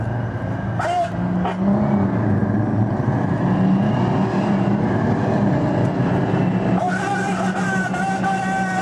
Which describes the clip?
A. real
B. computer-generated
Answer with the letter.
A